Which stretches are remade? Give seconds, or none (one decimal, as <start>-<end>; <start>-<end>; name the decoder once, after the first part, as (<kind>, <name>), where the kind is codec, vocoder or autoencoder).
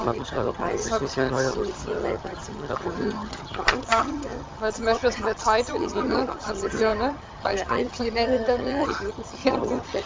0.0-10.1 (vocoder, HiFi-GAN)